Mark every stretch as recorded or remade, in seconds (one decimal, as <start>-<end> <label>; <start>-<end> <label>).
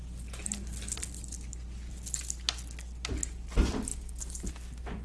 0.0-5.0 recorded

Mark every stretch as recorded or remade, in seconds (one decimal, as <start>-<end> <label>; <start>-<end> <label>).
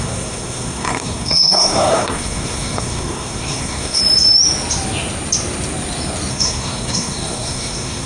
0.0-4.0 remade; 4.0-6.3 recorded; 6.3-8.1 remade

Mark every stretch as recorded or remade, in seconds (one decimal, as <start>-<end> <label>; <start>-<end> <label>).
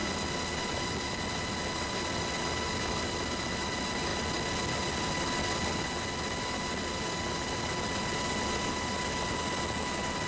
0.0-10.3 recorded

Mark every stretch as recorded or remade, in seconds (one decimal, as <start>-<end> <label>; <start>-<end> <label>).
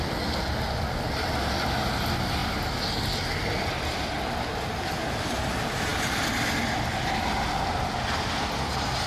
0.0-9.1 recorded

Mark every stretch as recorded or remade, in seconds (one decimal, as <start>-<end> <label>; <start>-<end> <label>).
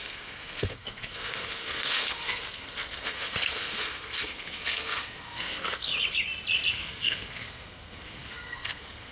0.0-5.9 remade; 5.9-6.7 recorded; 6.7-9.1 remade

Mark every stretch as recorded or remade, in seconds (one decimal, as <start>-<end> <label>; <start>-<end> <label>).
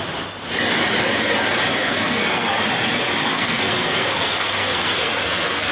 0.0-1.8 recorded; 1.8-2.6 remade; 2.6-3.2 recorded; 3.2-5.7 remade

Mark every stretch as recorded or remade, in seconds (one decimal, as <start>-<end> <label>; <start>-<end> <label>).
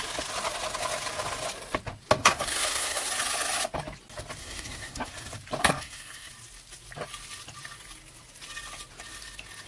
0.0-2.2 recorded; 2.2-3.1 remade; 3.1-4.4 recorded; 4.4-5.1 remade; 5.1-5.6 recorded; 5.6-6.3 remade; 6.3-9.7 recorded